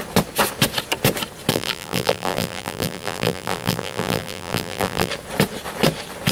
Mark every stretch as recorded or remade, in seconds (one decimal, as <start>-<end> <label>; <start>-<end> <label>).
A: 0.0-1.5 recorded; 1.5-5.1 remade; 5.1-6.3 recorded